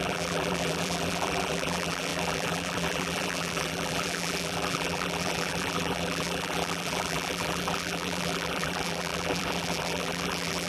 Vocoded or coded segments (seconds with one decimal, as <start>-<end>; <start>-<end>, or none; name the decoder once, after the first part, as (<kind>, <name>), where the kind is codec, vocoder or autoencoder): 0.0-10.7 (vocoder, BigVGAN v2)